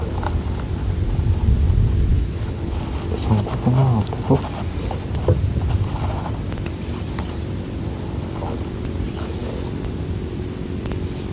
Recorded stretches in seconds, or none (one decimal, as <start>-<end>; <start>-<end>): 0.0-2.1; 2.8-11.3